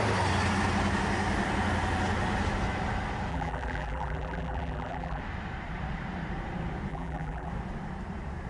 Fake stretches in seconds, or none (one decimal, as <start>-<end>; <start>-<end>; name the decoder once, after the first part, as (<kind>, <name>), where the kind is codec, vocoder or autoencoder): 3.3-5.2 (vocoder, BigVGAN v2); 6.9-7.5